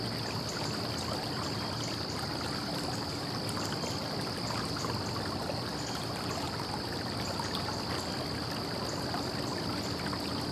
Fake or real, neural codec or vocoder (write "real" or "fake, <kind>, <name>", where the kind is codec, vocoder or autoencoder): real